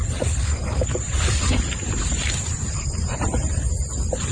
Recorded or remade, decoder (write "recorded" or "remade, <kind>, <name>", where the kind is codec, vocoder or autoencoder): remade, vocoder, BigVGAN v2